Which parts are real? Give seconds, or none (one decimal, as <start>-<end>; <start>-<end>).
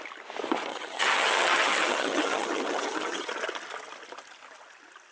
0.0-0.7; 3.3-5.1